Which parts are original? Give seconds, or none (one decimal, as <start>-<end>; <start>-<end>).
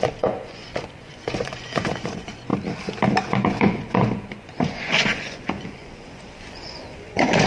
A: 2.5-3.2